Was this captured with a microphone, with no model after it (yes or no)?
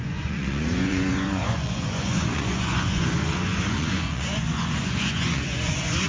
no